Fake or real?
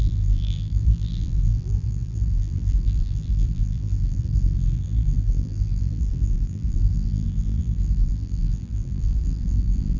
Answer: fake